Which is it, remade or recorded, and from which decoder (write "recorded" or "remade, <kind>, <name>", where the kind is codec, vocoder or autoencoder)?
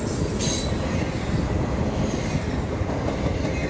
recorded